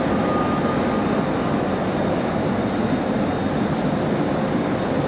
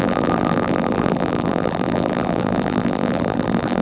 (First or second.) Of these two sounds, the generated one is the second